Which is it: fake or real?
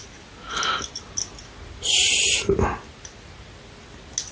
real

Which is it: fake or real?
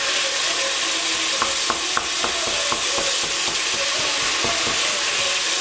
real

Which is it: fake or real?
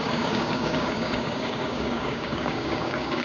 fake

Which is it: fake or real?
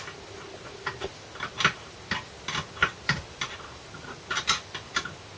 real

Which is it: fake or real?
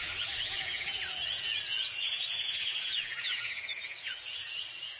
fake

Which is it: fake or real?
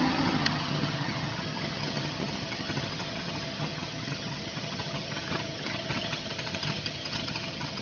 fake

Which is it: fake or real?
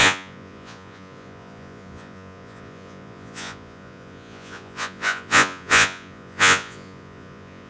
fake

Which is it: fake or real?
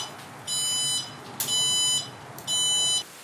real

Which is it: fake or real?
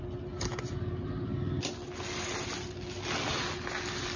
real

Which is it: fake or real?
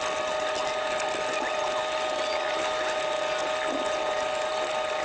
real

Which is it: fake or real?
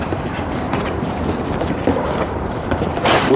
fake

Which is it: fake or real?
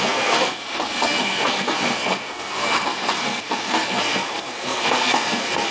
fake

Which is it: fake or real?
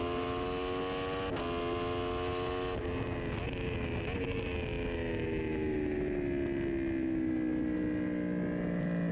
real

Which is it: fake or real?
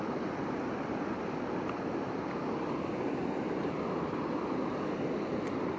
real